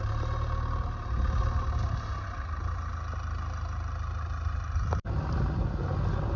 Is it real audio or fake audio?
real